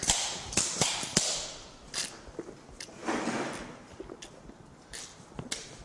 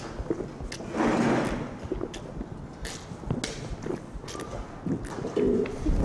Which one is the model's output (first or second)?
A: first